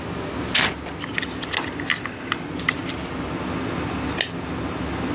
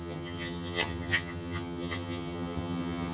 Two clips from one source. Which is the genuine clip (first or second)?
first